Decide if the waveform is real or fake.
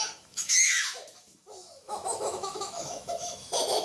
fake